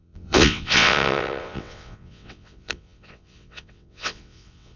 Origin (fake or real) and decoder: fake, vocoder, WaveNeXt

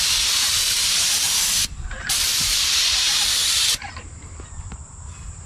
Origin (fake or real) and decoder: fake, vocoder, BigVGAN v2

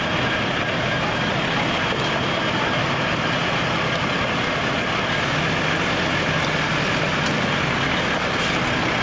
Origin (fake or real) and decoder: real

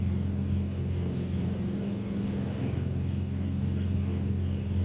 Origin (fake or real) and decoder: fake, codec, DAC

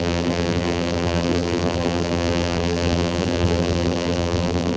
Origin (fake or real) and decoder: fake, vocoder, BigVGAN v2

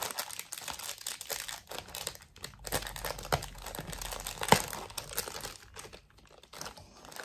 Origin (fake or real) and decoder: real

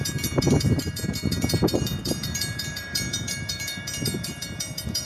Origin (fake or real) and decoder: fake, vocoder, BigVGAN v2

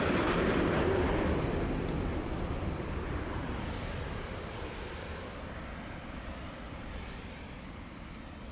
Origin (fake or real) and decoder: fake, vocoder, BigVGAN v2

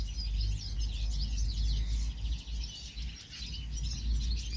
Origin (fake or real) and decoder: real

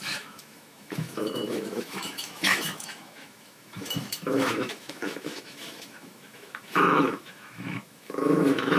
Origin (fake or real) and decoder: fake, autoencoder, DAC-VAE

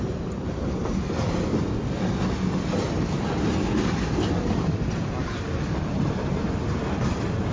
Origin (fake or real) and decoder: real